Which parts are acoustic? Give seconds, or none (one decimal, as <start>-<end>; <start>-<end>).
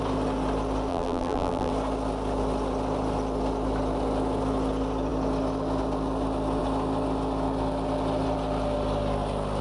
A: 0.0-0.9; 1.7-9.6